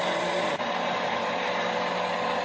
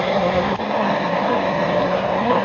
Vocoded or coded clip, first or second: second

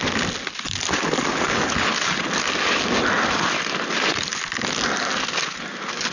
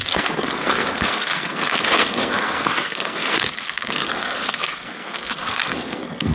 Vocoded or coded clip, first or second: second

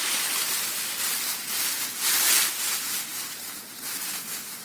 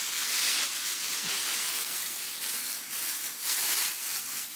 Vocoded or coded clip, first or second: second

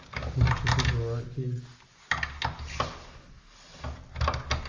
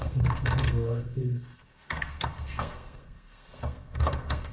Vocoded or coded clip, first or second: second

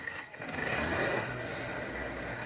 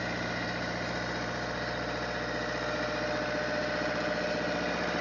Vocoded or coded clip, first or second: first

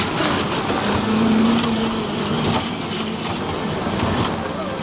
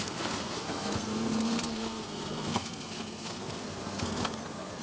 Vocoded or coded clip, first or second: second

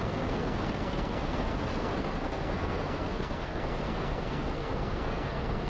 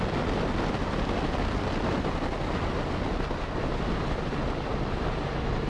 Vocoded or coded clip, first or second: first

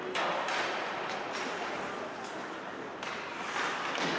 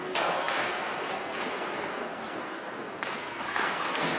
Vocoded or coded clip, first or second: second